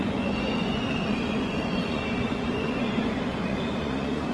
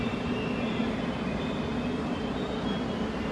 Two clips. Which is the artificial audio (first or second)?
first